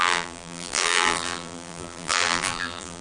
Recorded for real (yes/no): no